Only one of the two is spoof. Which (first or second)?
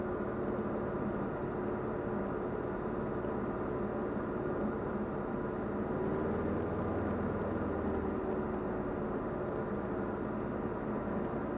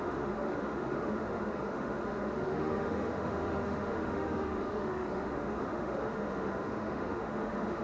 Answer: second